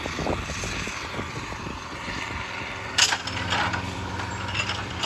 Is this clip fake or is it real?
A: fake